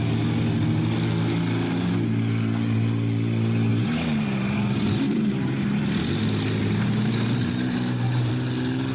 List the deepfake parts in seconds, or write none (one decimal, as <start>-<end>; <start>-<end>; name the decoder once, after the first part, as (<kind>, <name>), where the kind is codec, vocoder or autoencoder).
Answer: 3.7-8.3 (vocoder, BigVGAN v2)

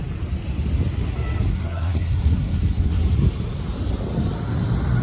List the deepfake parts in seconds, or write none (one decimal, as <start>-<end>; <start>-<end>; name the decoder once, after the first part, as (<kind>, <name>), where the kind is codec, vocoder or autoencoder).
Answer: 1.5-3.0 (codec, SNAC)

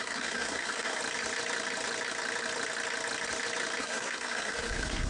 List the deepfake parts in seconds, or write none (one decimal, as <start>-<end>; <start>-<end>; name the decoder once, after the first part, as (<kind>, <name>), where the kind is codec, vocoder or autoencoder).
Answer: 0.0-1.0 (codec, SNAC); 3.8-5.1

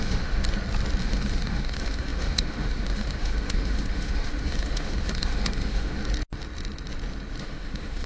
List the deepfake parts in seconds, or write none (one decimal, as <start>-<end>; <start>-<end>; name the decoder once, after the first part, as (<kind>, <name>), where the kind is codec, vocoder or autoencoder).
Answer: 0.0-0.4 (autoencoder, DAC-VAE); 1.0-6.0; 7.4-8.1

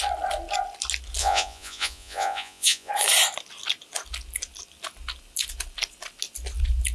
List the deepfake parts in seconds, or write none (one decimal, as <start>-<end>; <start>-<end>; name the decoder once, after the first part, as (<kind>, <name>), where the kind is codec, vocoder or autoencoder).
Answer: 1.2-2.9 (vocoder, Vocos)